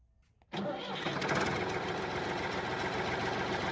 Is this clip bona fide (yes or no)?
yes